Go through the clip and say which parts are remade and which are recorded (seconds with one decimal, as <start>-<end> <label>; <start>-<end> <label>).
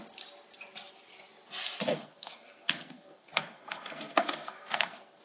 0.0-1.9 recorded; 1.9-5.2 remade